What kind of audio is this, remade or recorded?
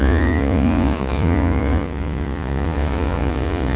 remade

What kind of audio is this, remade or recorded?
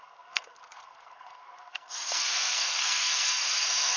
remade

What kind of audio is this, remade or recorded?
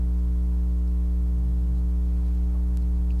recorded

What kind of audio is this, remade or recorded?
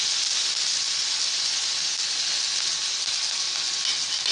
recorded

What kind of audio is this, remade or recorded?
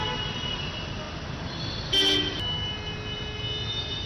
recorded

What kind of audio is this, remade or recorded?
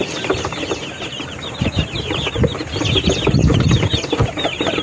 recorded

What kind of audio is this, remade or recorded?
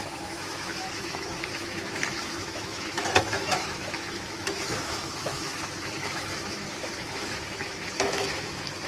remade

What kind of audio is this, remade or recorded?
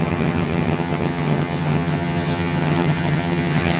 remade